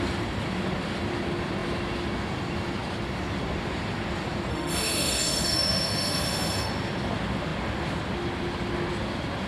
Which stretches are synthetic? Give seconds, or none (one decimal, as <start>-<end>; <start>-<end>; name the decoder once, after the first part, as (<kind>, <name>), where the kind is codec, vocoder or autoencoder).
4.5-6.7 (autoencoder, DAC-VAE)